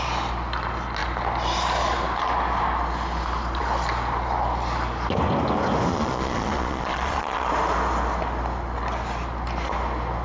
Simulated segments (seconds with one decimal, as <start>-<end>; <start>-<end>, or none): 5.9-7.5